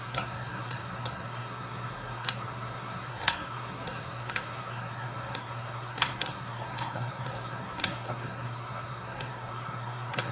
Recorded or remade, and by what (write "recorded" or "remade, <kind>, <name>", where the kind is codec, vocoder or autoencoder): remade, codec, SNAC